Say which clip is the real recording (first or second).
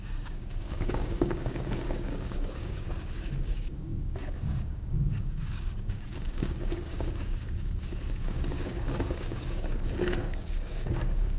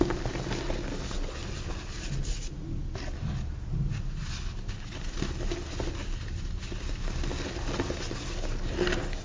second